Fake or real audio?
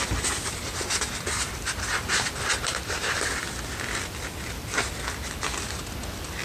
real